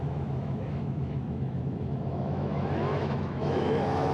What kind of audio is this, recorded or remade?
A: remade